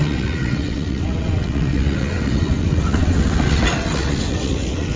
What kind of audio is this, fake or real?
fake